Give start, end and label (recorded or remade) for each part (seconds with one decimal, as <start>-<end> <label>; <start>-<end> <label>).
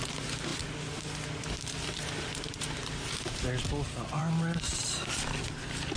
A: 0.0-6.0 recorded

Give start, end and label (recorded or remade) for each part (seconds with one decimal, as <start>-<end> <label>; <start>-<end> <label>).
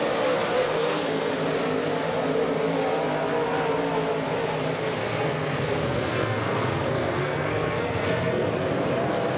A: 0.0-0.6 recorded; 0.6-1.3 remade; 1.3-5.0 recorded; 5.0-8.5 remade; 8.5-9.4 recorded